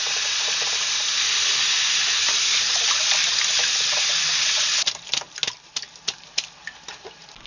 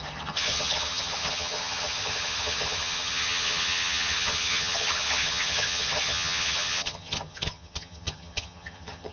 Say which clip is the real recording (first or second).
first